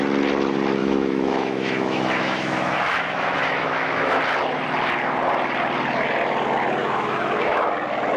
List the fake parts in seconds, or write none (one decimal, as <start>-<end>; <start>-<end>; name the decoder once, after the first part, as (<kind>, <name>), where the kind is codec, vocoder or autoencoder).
0.8-4.2 (autoencoder, DAC-VAE); 6.8-7.7

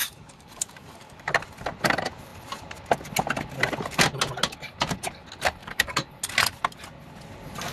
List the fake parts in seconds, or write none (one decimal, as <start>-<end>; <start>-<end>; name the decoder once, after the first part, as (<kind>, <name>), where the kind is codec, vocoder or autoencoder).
0.0-1.3 (codec, DAC); 5.6-6.1

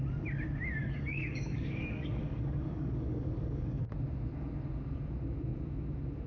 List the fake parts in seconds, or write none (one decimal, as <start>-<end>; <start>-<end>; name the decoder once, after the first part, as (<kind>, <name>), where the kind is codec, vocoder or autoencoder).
0.8-3.8 (codec, DAC)

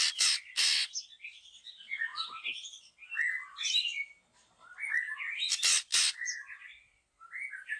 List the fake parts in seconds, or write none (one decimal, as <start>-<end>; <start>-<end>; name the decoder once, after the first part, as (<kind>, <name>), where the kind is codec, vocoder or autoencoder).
none

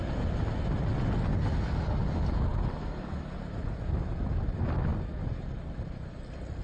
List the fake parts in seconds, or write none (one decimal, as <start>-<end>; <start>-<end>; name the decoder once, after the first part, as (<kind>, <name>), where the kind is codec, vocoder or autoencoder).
none

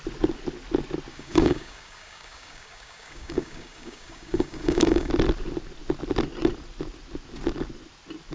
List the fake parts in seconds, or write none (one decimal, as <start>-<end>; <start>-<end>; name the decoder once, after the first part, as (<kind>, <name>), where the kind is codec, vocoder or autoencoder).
1.1-5.1 (codec, DAC)